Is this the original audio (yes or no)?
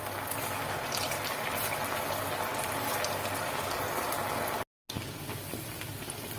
yes